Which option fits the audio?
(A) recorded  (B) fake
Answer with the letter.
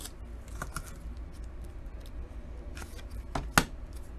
A